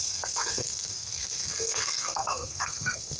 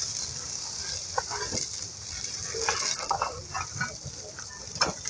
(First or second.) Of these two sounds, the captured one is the second